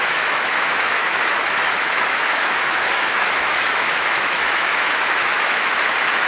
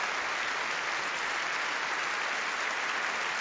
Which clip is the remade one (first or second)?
first